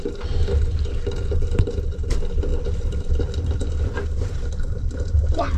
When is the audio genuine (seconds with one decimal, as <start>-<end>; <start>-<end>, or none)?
0.0-5.6